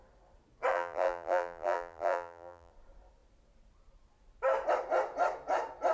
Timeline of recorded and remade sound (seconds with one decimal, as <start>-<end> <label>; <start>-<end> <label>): 0.0-0.7 recorded; 0.7-2.7 remade; 2.7-5.9 recorded